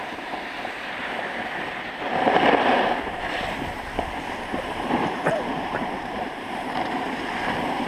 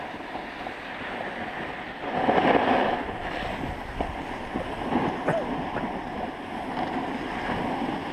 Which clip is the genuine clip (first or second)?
second